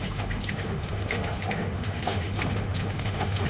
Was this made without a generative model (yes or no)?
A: no